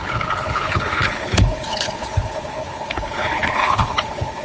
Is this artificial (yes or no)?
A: yes